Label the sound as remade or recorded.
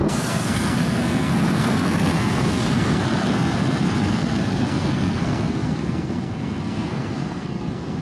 remade